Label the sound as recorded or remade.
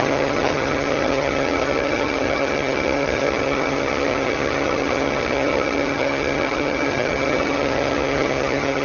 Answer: remade